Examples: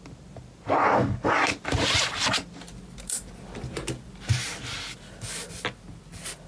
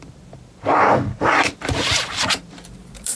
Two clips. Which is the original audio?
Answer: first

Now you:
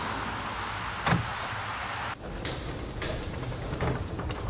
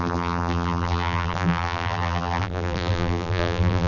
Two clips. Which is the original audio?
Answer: first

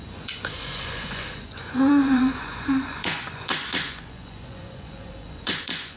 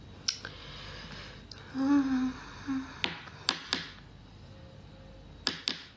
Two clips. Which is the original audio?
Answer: second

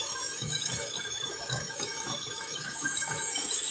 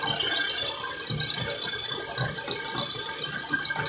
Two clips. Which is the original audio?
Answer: second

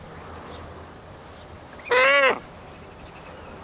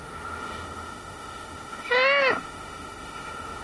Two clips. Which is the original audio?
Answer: first